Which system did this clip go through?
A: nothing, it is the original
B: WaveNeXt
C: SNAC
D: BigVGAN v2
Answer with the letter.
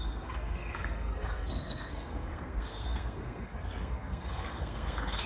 C